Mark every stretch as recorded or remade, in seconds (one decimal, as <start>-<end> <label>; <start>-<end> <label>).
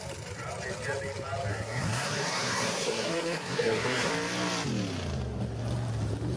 0.0-1.5 recorded; 1.5-4.1 remade; 4.1-6.4 recorded